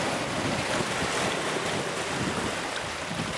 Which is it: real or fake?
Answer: real